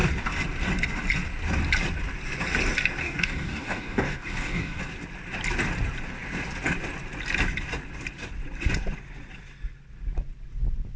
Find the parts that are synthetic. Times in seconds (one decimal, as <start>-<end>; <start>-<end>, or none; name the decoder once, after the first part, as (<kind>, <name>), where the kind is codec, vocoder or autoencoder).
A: 3.0-4.8 (codec, DAC)

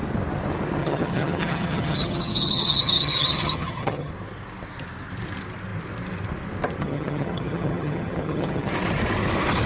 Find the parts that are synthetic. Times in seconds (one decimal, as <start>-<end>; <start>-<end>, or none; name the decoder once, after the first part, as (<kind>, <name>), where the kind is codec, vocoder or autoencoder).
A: 0.8-4.1 (vocoder, HiFi-GAN); 6.8-8.7

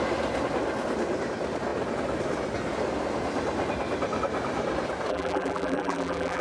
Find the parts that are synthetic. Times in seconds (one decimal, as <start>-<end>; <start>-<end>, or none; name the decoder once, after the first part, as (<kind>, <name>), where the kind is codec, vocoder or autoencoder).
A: 5.1-6.4 (vocoder, BigVGAN v2)

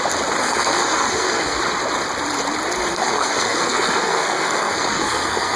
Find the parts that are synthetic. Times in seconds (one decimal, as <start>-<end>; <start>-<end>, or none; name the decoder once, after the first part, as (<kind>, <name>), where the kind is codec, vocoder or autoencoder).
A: 0.4-1.6 (codec, SNAC); 2.9-5.6

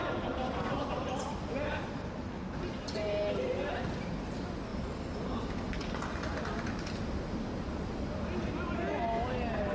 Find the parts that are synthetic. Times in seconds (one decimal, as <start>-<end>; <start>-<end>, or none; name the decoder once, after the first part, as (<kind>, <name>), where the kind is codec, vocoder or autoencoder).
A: none

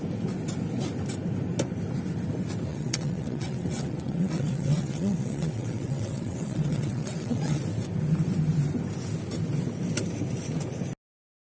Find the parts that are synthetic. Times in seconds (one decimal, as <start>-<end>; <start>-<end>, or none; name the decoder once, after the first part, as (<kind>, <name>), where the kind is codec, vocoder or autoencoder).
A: 2.7-7.6 (vocoder, WaveNeXt)

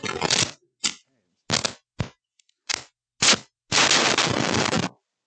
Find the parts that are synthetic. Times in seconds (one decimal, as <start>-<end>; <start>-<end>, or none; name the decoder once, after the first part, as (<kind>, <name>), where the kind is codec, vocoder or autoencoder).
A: none